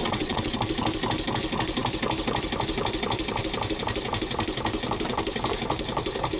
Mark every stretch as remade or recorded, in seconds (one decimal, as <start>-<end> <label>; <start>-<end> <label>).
0.0-0.5 remade; 0.5-6.4 recorded